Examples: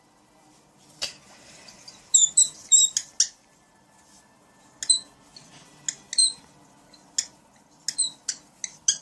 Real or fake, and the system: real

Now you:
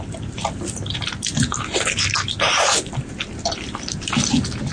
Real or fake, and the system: real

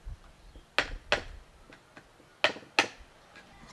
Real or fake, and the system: real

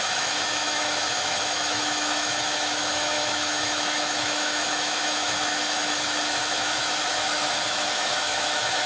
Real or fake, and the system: fake, autoencoder, DAC-VAE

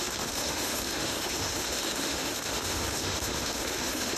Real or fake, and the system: fake, autoencoder, DAC-VAE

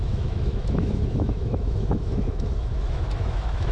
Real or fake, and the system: fake, autoencoder, DAC-VAE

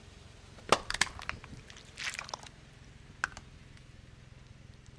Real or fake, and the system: real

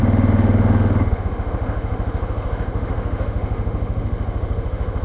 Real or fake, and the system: fake, autoencoder, DAC-VAE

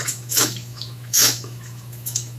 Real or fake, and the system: fake, autoencoder, DAC-VAE